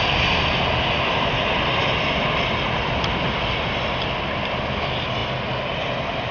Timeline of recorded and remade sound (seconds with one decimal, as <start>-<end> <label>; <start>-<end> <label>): 0.0-6.3 recorded

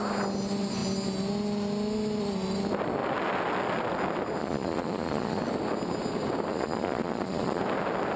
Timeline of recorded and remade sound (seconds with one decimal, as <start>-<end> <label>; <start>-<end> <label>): 0.0-4.4 recorded; 4.4-5.4 remade; 5.4-6.5 recorded; 6.5-7.6 remade; 7.6-8.2 recorded

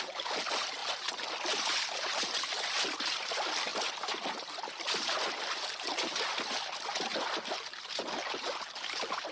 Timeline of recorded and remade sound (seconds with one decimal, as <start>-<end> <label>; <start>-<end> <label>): 0.0-9.3 recorded

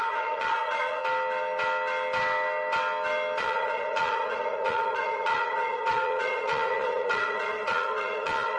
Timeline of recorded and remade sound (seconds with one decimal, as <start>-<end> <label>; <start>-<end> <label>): 0.0-1.0 remade; 1.0-3.4 recorded; 3.4-8.6 remade

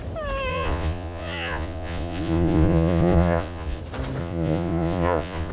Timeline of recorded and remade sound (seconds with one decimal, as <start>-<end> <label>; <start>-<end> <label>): 0.0-0.5 recorded; 0.5-3.8 remade; 3.8-4.2 recorded; 4.2-5.5 remade

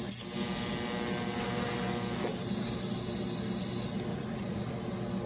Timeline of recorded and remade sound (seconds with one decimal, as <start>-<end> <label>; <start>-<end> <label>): 0.0-4.1 recorded; 4.1-4.7 remade; 4.7-5.3 recorded

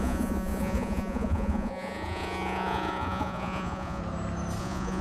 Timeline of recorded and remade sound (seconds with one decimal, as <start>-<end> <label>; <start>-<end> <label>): 0.0-4.0 remade; 4.0-4.6 recorded; 4.6-5.0 remade